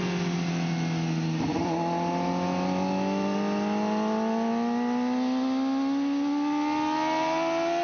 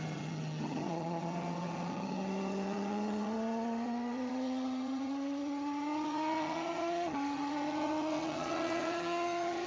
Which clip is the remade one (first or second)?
second